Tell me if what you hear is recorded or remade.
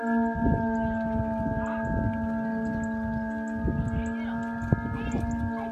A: recorded